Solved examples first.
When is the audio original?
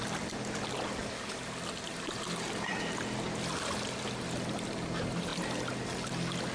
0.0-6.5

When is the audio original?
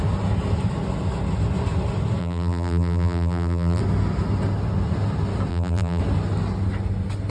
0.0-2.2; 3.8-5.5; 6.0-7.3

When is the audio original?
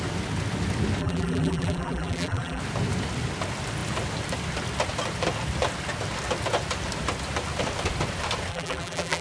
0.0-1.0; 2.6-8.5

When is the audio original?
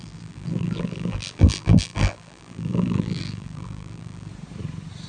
4.3-5.1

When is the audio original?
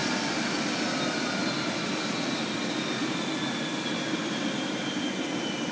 none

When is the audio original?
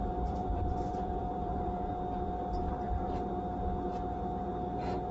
1.9-2.6; 3.3-5.1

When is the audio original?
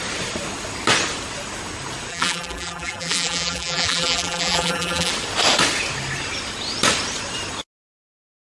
0.0-2.1; 5.1-8.5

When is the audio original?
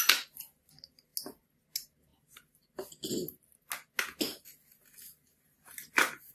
0.0-6.3